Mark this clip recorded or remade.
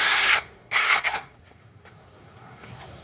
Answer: remade